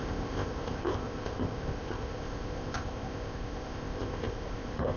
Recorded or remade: remade